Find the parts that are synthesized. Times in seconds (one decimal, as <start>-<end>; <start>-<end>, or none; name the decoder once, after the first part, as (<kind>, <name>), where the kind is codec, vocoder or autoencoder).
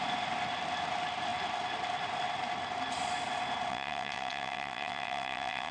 3.7-5.7 (vocoder, WaveNeXt)